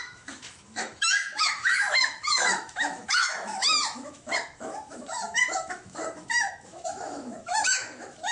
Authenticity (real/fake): fake